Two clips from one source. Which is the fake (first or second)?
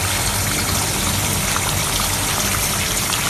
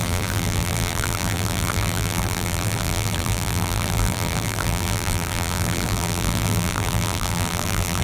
second